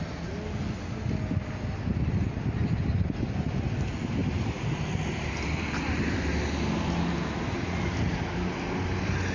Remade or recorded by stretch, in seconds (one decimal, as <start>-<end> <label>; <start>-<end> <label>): 0.0-9.3 recorded